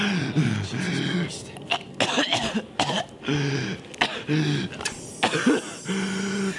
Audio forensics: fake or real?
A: real